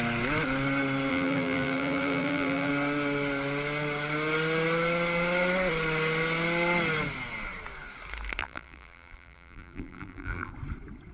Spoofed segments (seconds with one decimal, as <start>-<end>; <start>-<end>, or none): 1.1-2.7; 8.4-10.5